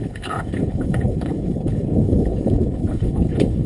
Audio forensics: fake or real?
fake